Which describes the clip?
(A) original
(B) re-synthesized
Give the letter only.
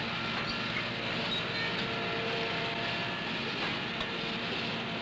A